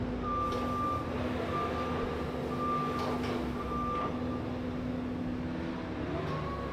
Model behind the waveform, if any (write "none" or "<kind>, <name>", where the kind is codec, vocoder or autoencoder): none